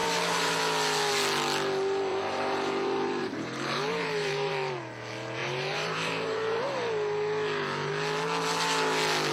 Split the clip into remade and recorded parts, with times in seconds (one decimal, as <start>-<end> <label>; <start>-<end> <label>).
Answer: 0.0-0.6 remade; 0.6-2.1 recorded; 2.1-4.5 remade; 4.5-5.4 recorded; 5.4-6.7 remade; 6.7-9.3 recorded